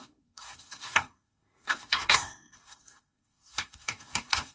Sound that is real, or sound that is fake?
fake